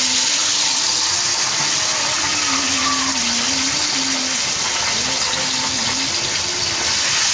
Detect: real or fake real